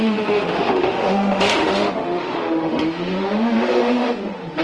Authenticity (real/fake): fake